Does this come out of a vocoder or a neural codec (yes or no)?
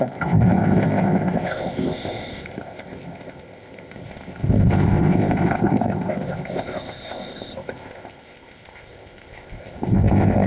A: yes